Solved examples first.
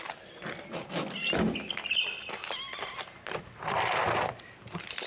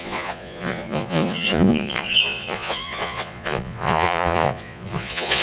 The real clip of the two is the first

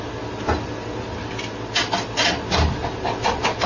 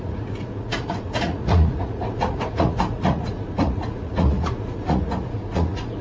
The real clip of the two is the first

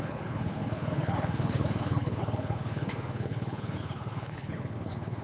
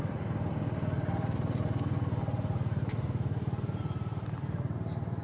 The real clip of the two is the second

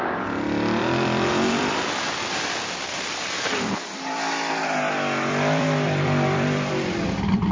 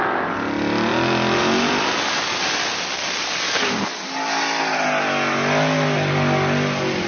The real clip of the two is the second